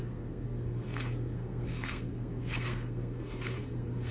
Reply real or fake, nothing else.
fake